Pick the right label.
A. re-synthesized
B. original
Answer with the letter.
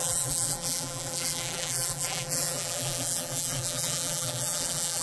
A